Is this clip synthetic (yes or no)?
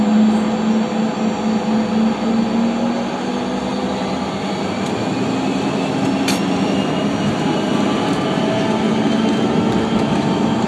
no